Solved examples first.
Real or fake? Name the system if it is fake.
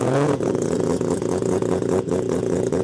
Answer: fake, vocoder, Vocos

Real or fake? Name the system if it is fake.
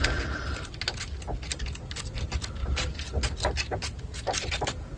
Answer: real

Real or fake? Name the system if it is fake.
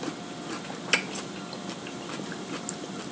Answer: real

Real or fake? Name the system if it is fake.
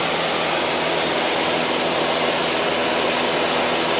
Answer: real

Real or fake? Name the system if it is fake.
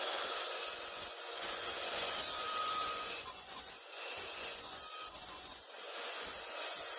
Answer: fake, vocoder, Vocos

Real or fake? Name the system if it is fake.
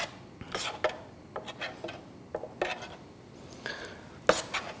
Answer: real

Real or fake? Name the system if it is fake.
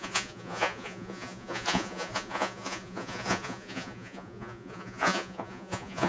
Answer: fake, vocoder, Vocos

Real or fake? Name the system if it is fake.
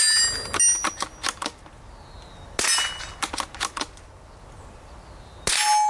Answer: real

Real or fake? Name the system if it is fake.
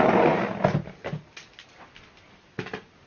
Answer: real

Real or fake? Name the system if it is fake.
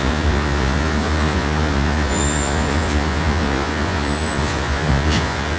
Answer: fake, vocoder, Vocos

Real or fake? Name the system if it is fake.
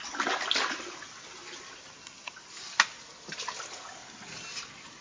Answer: real